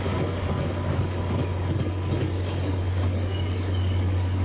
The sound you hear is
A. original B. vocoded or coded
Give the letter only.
B